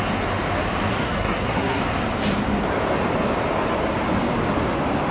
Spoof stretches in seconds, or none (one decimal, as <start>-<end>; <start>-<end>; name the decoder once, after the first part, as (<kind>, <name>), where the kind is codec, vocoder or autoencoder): 0.9-1.8 (codec, SNAC)